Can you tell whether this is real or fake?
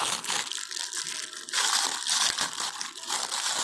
real